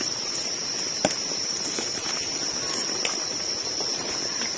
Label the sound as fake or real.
real